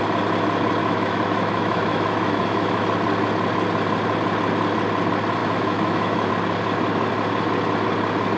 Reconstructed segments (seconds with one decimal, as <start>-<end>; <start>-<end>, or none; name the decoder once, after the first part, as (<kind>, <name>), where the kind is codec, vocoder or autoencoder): 0.8-2.8 (autoencoder, DAC-VAE); 5.4-6.3